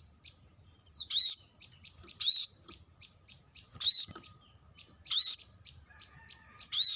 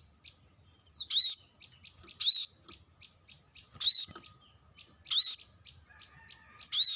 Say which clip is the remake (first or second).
first